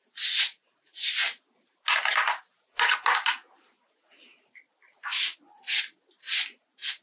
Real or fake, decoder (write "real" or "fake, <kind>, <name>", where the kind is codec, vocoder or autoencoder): real